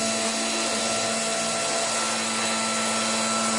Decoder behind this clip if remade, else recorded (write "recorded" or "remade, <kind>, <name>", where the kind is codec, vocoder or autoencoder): recorded